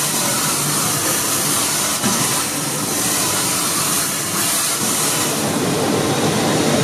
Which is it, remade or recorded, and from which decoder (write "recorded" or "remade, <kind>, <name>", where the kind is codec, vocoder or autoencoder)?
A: remade, vocoder, BigVGAN v2